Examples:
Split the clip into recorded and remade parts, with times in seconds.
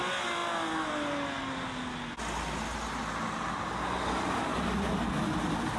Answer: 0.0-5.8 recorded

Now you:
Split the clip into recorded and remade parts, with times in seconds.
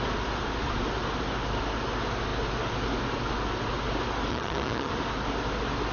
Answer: 0.0-4.3 recorded; 4.3-4.9 remade; 4.9-5.9 recorded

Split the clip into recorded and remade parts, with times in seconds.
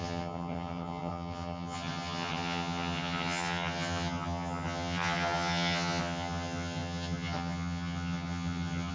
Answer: 0.0-8.9 remade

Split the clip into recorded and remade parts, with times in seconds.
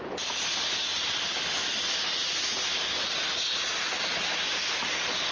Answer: 0.0-5.3 recorded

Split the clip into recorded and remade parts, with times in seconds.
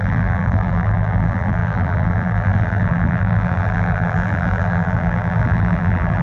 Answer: 0.0-6.2 remade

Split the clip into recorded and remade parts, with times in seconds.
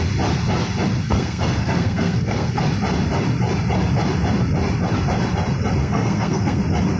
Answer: 0.0-1.0 recorded; 1.0-2.6 remade; 2.6-5.8 recorded; 5.8-6.6 remade; 6.6-7.0 recorded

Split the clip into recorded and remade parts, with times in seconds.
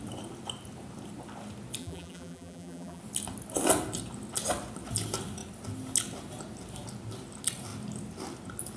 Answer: 0.0-1.8 recorded; 1.8-3.0 remade; 3.0-8.8 recorded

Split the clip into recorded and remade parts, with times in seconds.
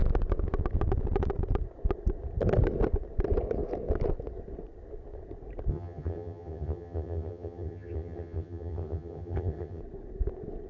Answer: 0.0-5.7 recorded; 5.7-9.8 remade; 9.8-10.7 recorded